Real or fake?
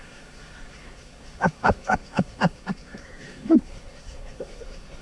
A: fake